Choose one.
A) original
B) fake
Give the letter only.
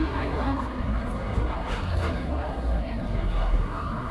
B